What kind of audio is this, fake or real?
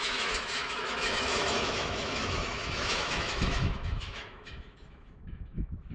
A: fake